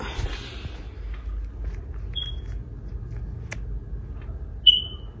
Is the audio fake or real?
real